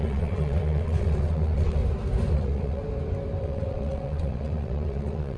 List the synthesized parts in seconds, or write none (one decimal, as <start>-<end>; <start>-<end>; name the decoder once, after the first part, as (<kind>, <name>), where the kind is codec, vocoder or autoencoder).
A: 0.0-1.8 (vocoder, WaveNeXt); 2.3-2.8; 3.4-5.4

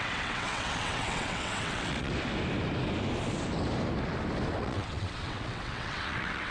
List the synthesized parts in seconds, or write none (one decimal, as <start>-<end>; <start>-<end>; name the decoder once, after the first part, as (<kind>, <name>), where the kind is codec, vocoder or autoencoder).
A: 0.0-2.1 (vocoder, WaveNeXt); 4.6-6.5

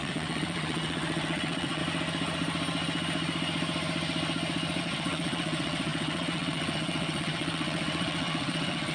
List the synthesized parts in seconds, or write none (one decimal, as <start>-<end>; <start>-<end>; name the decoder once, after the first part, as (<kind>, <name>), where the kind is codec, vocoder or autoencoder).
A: 0.0-1.8 (vocoder, WaveNeXt); 4.8-8.9

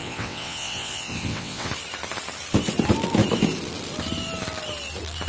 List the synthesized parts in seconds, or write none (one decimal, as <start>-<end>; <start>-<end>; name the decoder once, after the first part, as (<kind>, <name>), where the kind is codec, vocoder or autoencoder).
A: 0.0-1.7 (vocoder, WaveNeXt)